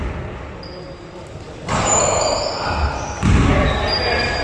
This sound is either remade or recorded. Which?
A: recorded